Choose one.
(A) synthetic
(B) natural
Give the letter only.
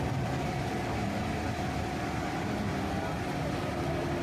B